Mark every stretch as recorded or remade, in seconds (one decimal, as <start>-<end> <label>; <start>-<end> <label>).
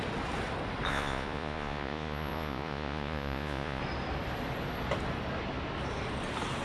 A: 0.0-0.9 recorded; 0.9-3.8 remade; 3.8-6.6 recorded